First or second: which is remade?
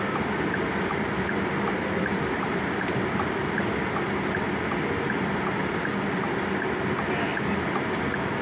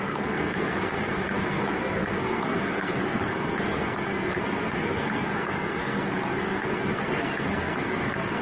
second